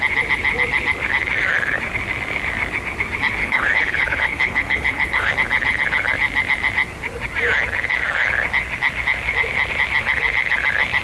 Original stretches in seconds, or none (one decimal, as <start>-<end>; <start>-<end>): 0.0-3.4; 5.3-11.0